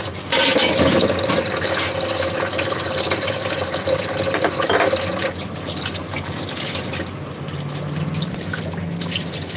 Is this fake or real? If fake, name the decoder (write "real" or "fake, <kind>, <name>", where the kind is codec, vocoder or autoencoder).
real